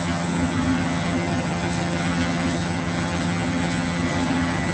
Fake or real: fake